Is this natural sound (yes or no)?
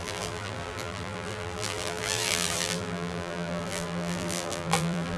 no